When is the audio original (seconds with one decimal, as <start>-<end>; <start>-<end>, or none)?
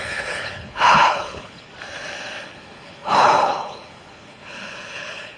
1.7-2.4